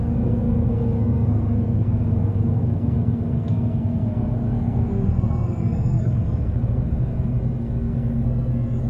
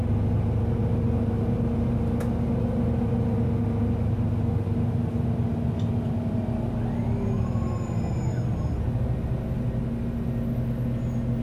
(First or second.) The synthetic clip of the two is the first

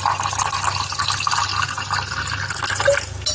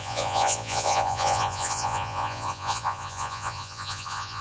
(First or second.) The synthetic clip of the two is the second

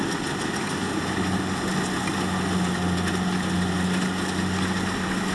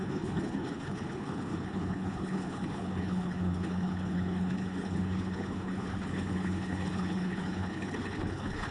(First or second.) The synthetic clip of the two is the second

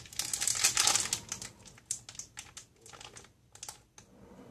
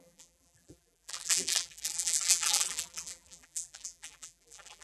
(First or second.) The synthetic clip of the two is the second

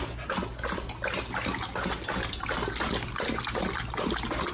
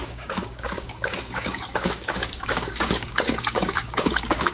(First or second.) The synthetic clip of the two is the second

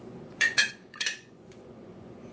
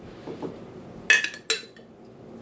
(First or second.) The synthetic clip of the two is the first